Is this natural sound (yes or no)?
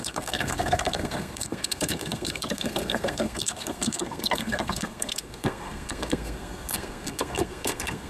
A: no